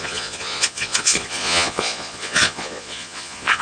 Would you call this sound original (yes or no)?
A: no